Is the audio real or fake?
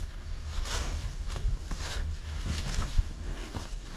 fake